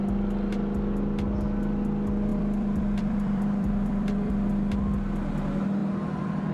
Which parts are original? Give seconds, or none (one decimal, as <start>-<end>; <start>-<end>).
0.0-2.3; 4.3-5.8